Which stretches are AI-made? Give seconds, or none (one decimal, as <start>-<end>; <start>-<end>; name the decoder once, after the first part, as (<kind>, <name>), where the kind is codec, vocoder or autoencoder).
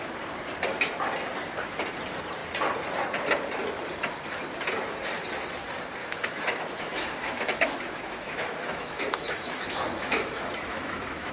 6.0-11.3 (autoencoder, DAC-VAE)